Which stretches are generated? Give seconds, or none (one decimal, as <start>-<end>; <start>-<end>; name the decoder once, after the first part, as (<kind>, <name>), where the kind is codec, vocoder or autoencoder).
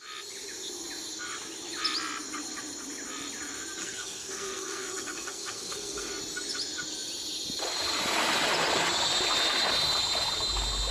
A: 3.8-6.1 (codec, SNAC)